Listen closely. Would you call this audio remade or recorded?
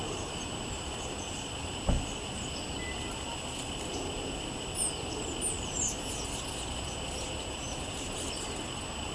recorded